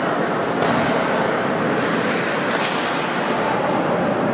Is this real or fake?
real